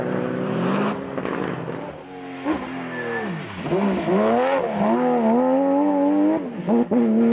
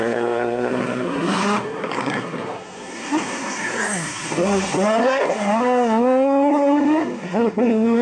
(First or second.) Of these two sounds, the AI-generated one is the second